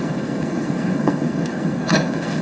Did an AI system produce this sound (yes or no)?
yes